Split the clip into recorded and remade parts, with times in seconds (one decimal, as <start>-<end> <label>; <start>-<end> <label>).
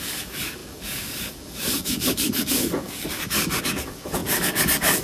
0.0-5.0 remade